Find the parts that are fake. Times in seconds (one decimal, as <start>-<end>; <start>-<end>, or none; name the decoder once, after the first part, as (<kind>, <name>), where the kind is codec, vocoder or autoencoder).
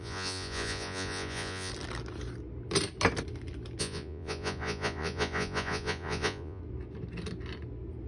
0.0-1.7 (vocoder, Vocos); 3.8-6.6